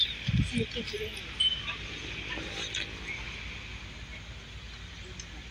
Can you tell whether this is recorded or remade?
recorded